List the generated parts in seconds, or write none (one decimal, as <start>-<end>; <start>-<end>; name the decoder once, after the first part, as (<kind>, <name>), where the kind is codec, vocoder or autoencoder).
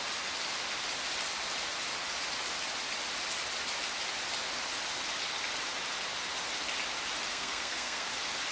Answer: 7.3-8.1 (codec, SNAC)